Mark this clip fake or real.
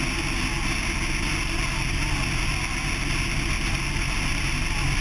real